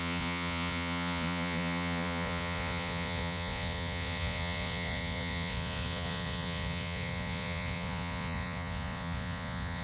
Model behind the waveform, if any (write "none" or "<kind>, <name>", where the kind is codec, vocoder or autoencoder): vocoder, Vocos